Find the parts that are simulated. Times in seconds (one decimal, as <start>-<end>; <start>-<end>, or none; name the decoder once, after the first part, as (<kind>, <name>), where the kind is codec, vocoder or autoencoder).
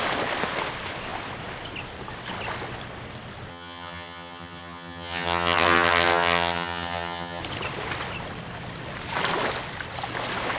3.5-7.4 (vocoder, HiFi-GAN)